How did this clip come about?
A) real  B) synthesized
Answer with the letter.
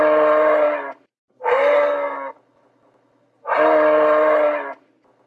A